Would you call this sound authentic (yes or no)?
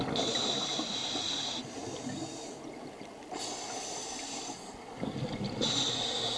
yes